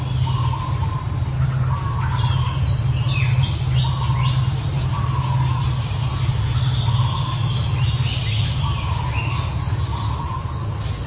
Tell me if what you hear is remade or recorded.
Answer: recorded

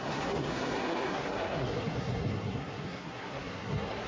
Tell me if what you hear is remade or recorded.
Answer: remade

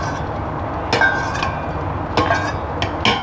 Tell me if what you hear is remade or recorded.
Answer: recorded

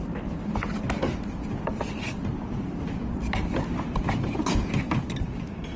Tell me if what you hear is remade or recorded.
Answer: recorded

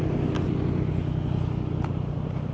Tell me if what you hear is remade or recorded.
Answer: recorded